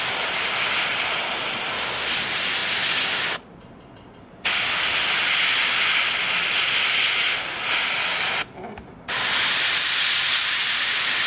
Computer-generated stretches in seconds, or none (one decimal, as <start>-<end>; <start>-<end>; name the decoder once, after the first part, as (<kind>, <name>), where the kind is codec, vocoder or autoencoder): none